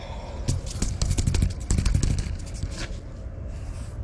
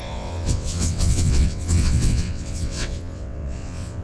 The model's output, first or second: second